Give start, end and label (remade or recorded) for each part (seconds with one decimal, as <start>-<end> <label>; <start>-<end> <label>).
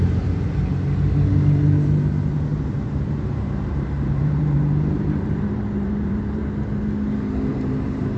0.0-2.5 recorded; 2.5-6.4 remade; 6.4-7.5 recorded; 7.5-8.2 remade